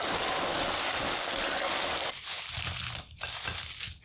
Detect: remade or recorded recorded